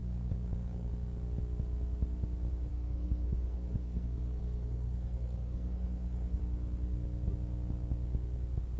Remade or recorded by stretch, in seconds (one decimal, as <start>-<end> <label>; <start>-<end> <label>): 0.0-0.9 remade; 0.9-2.7 recorded; 2.7-6.4 remade; 6.4-8.8 recorded

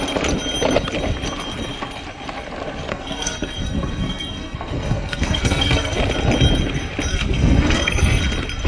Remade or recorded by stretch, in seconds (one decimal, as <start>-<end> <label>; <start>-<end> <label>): 0.0-2.9 recorded; 2.9-6.0 remade; 6.0-7.1 recorded; 7.1-8.2 remade; 8.2-8.7 recorded

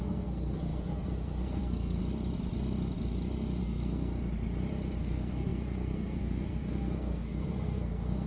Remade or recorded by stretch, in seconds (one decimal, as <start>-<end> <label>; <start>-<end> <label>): 0.0-2.0 remade; 2.0-3.6 recorded; 3.6-4.1 remade; 4.1-5.0 recorded; 5.0-8.3 remade

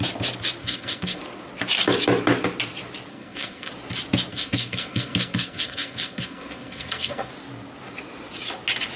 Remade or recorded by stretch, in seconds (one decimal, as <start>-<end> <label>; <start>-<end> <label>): 0.0-0.6 recorded; 0.6-1.2 remade; 1.2-3.1 recorded; 3.1-3.7 remade; 3.7-4.3 recorded; 4.3-7.3 remade; 7.3-9.0 recorded